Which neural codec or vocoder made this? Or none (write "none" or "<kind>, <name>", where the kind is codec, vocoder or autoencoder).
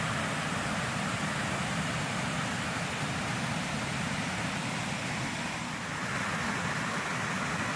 vocoder, BigVGAN v2